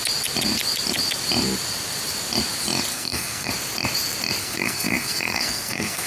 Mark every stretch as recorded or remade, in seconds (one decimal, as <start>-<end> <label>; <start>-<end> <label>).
0.0-2.9 recorded; 2.9-3.5 remade; 3.5-4.4 recorded; 4.4-6.1 remade

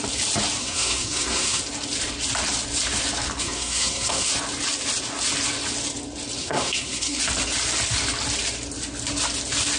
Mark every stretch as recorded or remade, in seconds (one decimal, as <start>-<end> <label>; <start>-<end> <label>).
0.0-0.6 recorded; 0.6-1.6 remade; 1.6-3.4 recorded; 3.4-4.3 remade; 4.3-6.4 recorded; 6.4-7.2 remade; 7.2-9.8 recorded

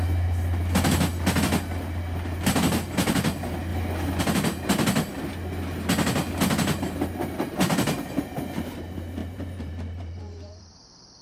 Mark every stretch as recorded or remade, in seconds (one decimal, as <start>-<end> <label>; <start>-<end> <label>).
0.0-9.2 recorded; 9.2-10.6 remade; 10.6-11.2 recorded

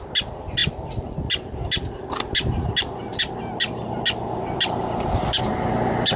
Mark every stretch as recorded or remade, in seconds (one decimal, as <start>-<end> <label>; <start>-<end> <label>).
0.0-6.2 recorded

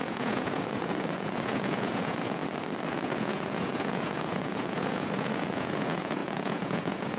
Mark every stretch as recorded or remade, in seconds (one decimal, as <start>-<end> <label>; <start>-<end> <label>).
0.0-2.4 remade; 2.4-2.9 recorded; 2.9-7.2 remade

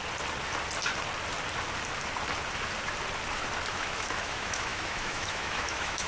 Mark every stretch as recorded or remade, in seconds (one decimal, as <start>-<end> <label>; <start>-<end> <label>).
0.0-3.7 recorded; 3.7-6.1 remade